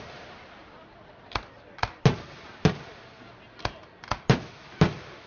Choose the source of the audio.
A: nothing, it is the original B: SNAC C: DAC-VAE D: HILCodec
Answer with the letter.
A